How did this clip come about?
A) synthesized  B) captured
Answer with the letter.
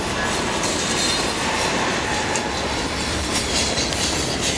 B